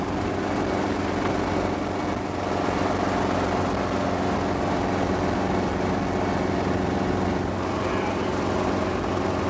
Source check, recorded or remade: recorded